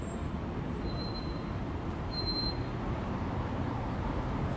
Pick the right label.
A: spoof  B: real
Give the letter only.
A